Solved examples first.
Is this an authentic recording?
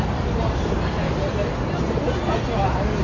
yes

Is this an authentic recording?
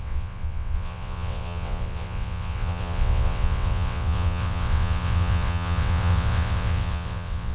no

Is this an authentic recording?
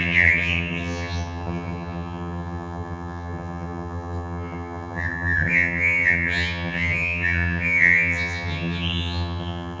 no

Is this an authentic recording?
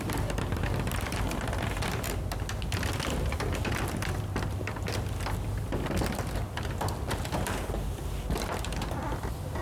yes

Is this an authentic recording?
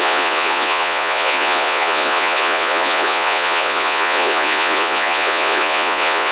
no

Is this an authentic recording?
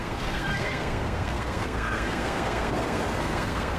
no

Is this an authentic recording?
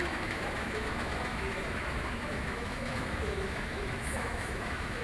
no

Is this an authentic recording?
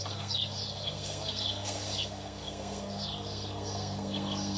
no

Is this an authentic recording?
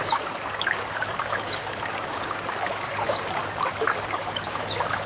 no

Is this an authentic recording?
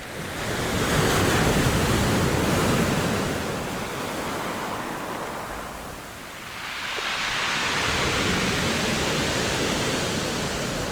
yes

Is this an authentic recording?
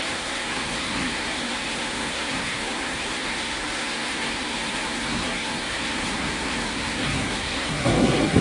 no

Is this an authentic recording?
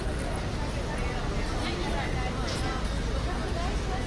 yes